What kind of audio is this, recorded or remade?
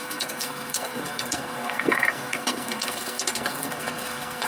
remade